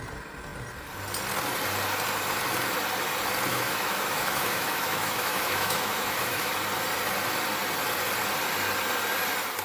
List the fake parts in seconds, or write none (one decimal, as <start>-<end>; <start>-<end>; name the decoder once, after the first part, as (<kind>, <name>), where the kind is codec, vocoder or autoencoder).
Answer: 3.5-6.5 (autoencoder, DAC-VAE)